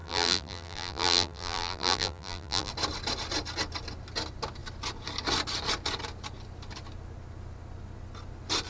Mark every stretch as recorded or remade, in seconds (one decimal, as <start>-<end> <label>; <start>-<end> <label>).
0.0-2.7 remade; 2.7-8.7 recorded